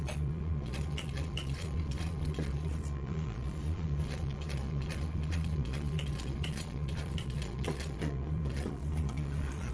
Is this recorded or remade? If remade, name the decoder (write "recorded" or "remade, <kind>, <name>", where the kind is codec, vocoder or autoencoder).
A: remade, vocoder, Vocos